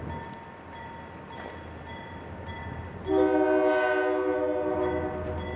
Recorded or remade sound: recorded